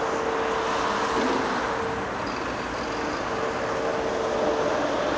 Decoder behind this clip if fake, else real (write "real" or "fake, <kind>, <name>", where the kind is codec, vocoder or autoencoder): real